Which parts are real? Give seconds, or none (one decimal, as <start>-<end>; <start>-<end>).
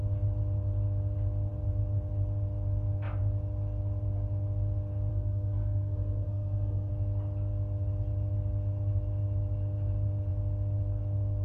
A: 0.0-5.1; 6.9-11.4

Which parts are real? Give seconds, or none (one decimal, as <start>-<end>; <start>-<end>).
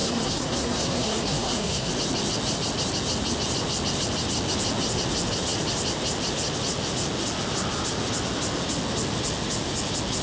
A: 1.9-10.2